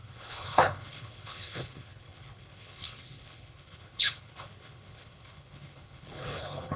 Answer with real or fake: fake